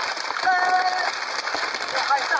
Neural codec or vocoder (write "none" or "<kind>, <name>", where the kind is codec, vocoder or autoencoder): none